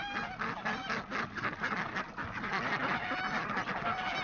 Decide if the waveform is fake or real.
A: real